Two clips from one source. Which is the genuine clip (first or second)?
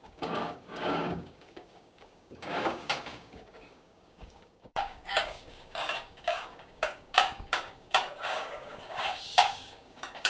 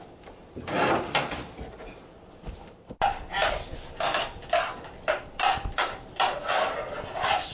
second